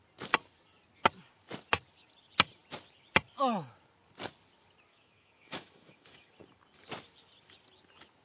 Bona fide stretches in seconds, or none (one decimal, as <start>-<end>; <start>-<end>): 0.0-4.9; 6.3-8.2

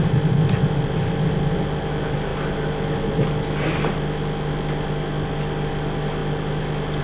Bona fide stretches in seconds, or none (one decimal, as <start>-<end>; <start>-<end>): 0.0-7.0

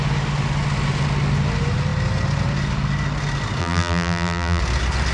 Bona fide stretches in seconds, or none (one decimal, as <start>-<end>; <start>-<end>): 0.0-3.6; 4.6-5.1

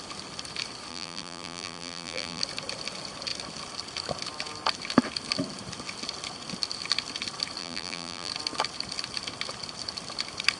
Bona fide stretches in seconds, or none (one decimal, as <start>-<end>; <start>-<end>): 0.0-0.9; 2.4-7.6; 8.3-10.6

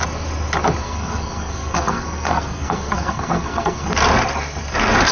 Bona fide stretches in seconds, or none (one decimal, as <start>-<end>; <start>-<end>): 0.0-0.8; 3.9-5.1

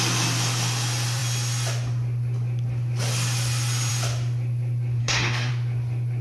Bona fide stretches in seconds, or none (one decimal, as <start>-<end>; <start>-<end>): 0.0-5.0; 5.5-6.2

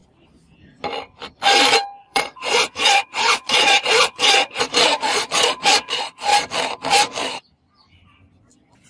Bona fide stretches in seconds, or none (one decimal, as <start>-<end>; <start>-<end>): 0.0-2.0; 6.3-8.4

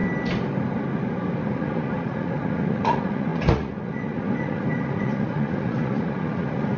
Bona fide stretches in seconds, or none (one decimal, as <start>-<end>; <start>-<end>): 0.0-1.4